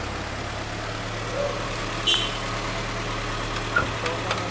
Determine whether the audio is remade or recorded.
recorded